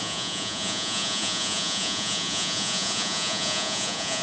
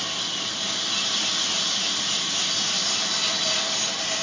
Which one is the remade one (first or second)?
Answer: first